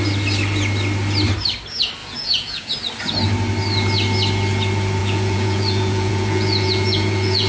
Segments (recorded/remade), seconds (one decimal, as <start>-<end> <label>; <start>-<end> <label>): 0.0-2.0 recorded; 2.0-2.7 remade; 2.7-5.0 recorded; 5.0-7.5 remade